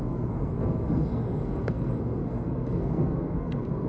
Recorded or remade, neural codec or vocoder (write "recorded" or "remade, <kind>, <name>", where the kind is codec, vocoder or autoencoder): remade, codec, SNAC